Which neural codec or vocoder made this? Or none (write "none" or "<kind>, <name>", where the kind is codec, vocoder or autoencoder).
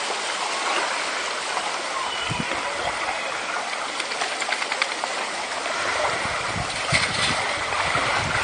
none